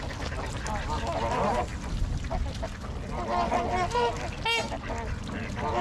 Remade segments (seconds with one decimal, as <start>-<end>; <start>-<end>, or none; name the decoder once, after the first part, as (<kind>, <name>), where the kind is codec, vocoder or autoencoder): none